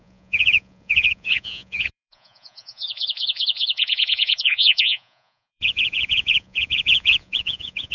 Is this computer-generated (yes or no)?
yes